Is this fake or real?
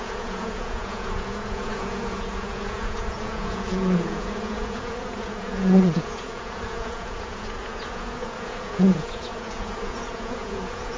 fake